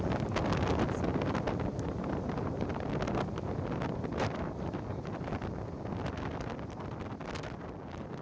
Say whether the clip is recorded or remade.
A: recorded